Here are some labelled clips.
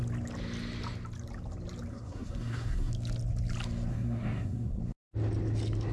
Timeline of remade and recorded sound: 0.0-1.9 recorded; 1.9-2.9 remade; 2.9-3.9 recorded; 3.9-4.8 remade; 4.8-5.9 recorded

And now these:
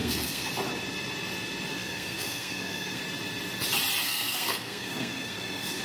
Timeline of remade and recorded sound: 0.0-0.5 remade; 0.5-1.7 recorded; 1.7-3.0 remade; 3.0-4.0 recorded; 4.0-5.8 remade

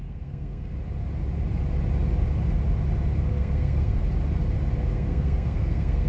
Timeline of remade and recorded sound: 0.0-0.7 remade; 0.7-3.2 recorded; 3.2-4.0 remade; 4.0-4.8 recorded; 4.8-6.1 remade

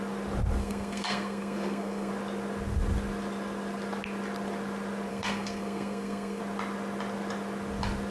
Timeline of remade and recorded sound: 0.0-0.6 recorded; 0.6-2.1 remade; 2.1-5.1 recorded; 5.1-6.4 remade; 6.4-8.1 recorded